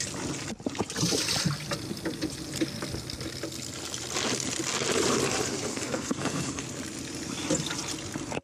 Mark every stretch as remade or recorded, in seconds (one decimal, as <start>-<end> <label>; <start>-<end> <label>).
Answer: 0.0-5.7 recorded; 5.7-6.6 remade; 6.6-8.4 recorded